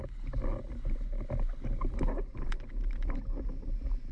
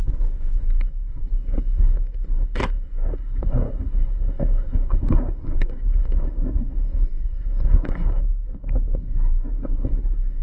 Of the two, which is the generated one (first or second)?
second